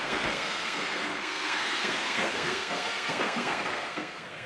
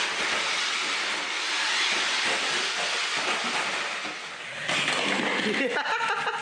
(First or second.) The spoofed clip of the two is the first